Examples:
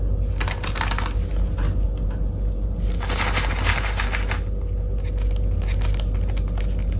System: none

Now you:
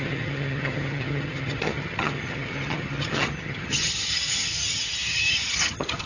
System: vocoder, HiFi-GAN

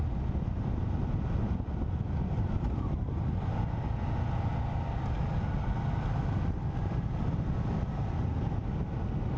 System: none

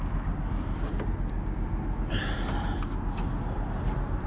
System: none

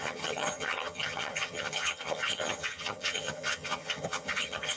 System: vocoder, HiFi-GAN